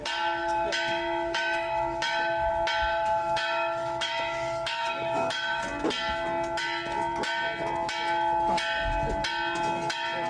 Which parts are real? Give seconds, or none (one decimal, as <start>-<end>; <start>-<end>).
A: 0.0-0.4; 2.5-2.9; 5.6-10.3